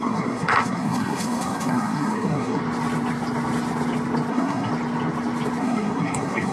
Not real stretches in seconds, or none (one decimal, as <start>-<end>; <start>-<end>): 0.0-2.6; 4.3-4.7; 5.6-6.5